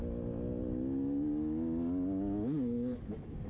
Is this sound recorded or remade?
recorded